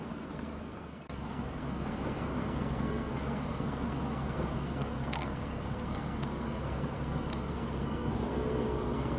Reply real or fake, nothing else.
fake